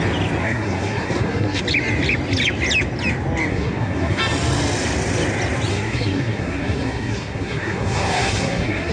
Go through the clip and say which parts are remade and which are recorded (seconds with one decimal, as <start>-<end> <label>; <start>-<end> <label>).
0.0-0.4 recorded; 0.4-1.6 remade; 1.6-3.5 recorded; 3.5-4.2 remade; 4.2-5.7 recorded; 5.7-8.9 remade